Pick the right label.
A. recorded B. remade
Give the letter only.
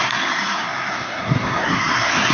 B